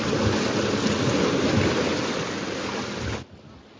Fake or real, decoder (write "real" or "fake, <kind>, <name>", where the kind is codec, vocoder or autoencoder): real